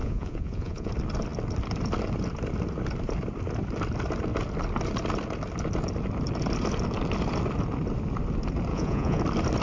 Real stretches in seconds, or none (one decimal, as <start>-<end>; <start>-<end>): 0.9-8.7; 9.2-9.6